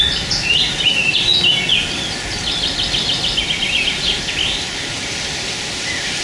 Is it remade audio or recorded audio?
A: recorded